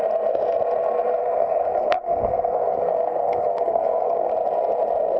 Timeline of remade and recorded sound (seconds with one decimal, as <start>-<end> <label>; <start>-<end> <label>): 0.0-1.2 recorded; 1.2-4.3 remade; 4.3-5.2 recorded